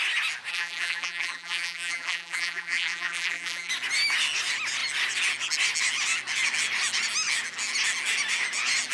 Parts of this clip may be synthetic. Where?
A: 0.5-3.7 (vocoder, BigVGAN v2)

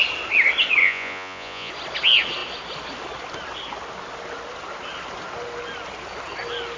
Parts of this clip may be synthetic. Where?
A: 0.8-1.7 (vocoder, Vocos)